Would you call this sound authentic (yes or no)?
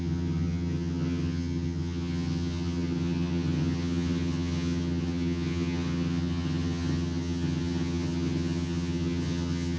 no